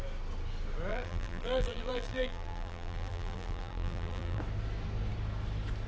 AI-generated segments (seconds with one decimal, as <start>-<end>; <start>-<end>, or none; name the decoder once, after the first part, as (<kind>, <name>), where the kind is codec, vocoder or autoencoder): 0.9-4.4 (vocoder, BigVGAN v2)